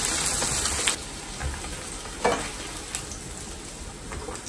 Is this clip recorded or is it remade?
recorded